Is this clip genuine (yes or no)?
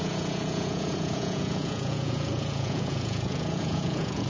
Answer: no